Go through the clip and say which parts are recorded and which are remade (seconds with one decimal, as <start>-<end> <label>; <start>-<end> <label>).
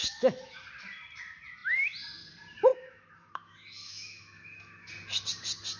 0.0-0.6 remade; 0.6-2.7 recorded; 2.7-4.9 remade; 4.9-5.8 recorded